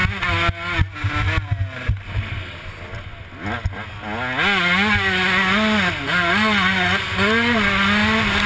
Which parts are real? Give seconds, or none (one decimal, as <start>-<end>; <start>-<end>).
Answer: 0.0-8.5